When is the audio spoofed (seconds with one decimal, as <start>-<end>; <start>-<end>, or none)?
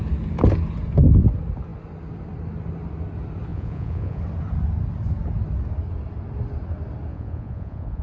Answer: 3.5-4.2; 7.1-8.0